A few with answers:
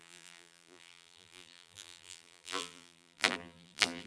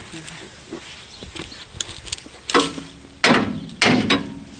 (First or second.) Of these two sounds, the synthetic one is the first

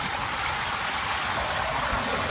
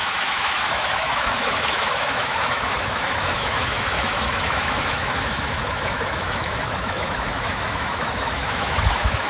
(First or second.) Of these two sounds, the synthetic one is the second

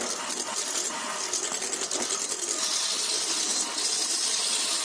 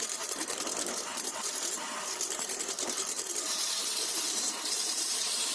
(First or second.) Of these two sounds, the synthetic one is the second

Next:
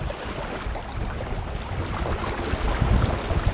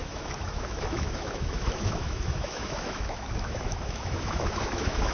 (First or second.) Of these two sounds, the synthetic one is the second